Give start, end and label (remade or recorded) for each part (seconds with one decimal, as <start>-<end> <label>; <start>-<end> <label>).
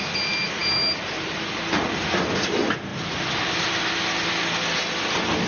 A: 0.0-5.5 recorded